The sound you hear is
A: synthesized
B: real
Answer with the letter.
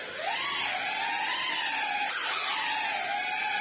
B